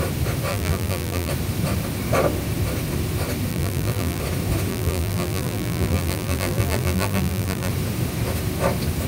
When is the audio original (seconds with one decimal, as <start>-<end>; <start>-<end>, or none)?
0.0-0.5; 1.3-3.5; 4.2-4.7; 7.7-9.1